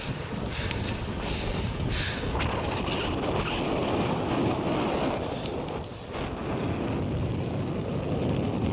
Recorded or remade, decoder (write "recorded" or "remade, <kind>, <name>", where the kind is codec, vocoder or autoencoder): recorded